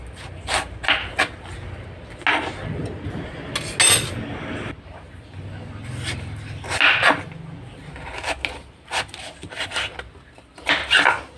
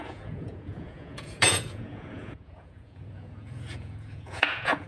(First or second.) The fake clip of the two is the second